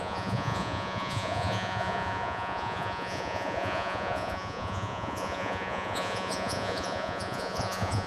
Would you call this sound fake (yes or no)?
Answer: yes